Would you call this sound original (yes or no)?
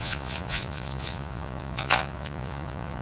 no